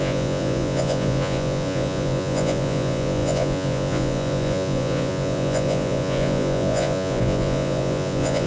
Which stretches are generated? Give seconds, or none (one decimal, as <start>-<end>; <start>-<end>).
0.0-8.5